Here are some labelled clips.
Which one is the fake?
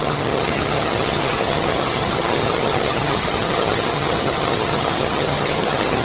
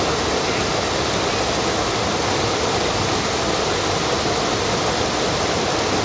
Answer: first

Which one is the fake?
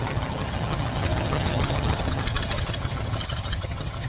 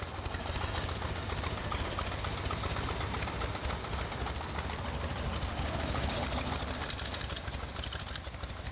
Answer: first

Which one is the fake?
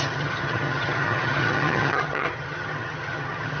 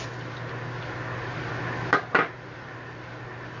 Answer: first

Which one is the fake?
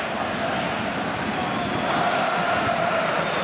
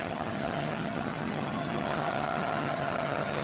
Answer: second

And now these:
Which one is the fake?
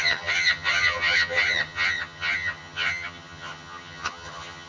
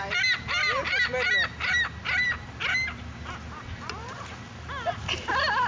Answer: first